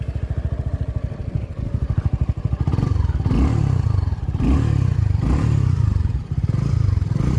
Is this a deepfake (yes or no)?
no